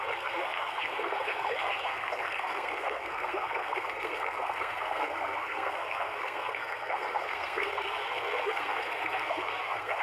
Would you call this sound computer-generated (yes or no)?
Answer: yes